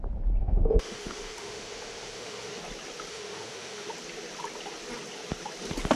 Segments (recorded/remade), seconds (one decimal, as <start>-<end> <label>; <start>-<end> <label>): 0.0-0.4 recorded; 0.4-2.6 remade; 2.6-3.1 recorded; 3.1-3.9 remade; 3.9-6.0 recorded